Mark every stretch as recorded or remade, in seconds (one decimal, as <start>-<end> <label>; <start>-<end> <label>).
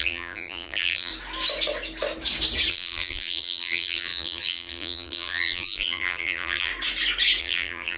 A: 0.0-1.1 remade; 1.1-2.7 recorded; 2.7-6.7 remade; 6.7-7.4 recorded; 7.4-8.0 remade